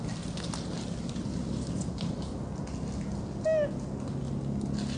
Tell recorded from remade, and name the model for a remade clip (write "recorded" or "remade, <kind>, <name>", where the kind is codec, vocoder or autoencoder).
recorded